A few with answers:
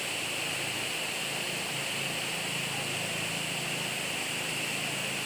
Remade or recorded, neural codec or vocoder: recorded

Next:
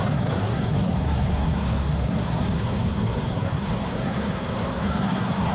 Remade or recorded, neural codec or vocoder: remade, codec, SNAC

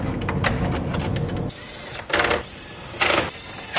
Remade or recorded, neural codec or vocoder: recorded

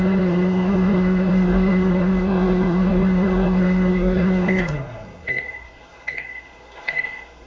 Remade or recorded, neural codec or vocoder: remade, codec, SNAC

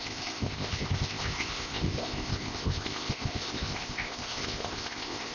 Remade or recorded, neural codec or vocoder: remade, codec, ZipCodec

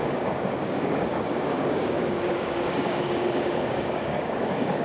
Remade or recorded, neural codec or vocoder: remade, codec, DAC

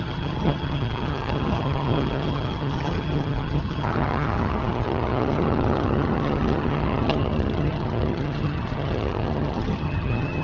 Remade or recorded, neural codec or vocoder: remade, vocoder, HiFi-GAN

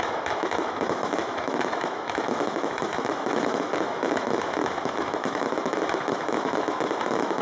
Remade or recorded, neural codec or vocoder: remade, autoencoder, DAC-VAE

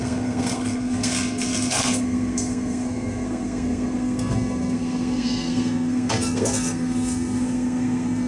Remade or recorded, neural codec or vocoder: remade, codec, SNAC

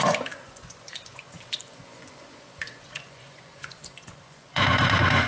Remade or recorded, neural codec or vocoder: remade, vocoder, Vocos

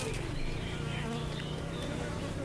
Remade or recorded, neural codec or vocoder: recorded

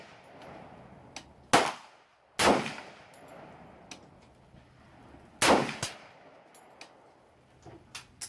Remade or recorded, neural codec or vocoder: recorded